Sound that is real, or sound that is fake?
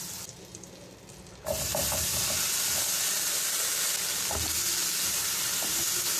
real